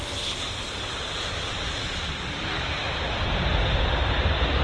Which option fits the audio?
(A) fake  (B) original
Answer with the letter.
B